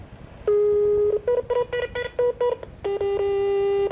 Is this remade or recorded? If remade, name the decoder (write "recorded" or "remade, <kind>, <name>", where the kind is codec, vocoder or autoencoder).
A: recorded